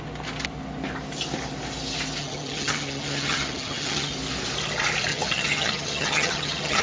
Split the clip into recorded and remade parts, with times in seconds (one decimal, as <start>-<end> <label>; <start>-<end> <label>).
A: 0.0-2.2 recorded; 2.2-4.1 remade; 4.1-5.1 recorded; 5.1-6.8 remade